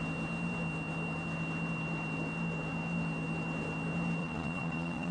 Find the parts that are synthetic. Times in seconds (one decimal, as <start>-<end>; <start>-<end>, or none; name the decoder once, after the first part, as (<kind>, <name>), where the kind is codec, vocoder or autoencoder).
4.2-5.1 (vocoder, Vocos)